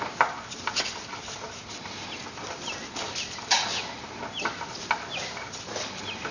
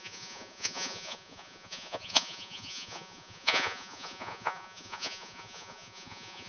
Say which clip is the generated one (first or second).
second